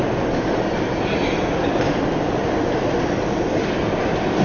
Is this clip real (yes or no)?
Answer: yes